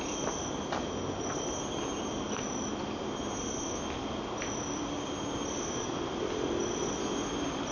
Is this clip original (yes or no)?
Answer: yes